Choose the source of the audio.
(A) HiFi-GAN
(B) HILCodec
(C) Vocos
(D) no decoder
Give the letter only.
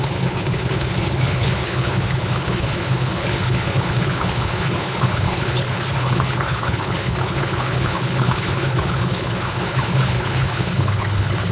B